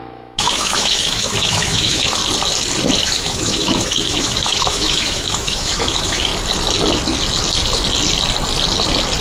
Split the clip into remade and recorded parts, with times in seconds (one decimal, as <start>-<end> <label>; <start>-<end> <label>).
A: 0.0-2.2 remade; 2.2-3.0 recorded; 3.0-6.3 remade; 6.3-9.2 recorded